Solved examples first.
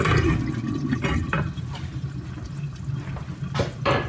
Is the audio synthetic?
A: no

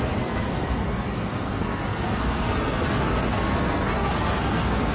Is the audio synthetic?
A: yes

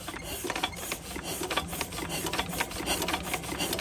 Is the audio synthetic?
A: no